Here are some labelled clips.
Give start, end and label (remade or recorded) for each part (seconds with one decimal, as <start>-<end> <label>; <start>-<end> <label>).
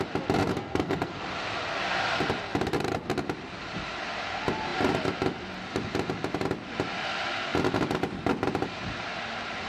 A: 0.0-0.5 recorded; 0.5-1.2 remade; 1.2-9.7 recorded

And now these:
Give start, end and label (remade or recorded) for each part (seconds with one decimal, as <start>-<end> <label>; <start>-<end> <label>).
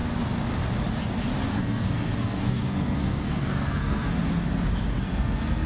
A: 0.0-1.6 recorded; 1.6-4.1 remade; 4.1-5.0 recorded; 5.0-5.7 remade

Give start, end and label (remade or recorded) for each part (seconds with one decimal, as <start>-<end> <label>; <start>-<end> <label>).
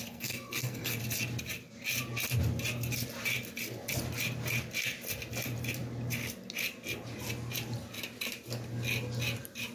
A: 0.0-1.0 remade; 1.0-9.7 recorded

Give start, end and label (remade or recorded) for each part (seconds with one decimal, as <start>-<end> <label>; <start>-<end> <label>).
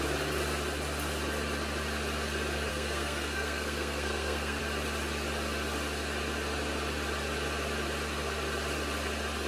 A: 0.0-2.7 recorded; 2.7-4.6 remade; 4.6-9.5 recorded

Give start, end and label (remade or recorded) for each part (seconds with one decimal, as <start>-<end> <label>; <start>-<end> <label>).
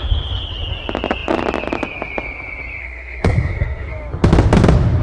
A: 0.0-2.8 recorded; 2.8-3.9 remade; 3.9-5.0 recorded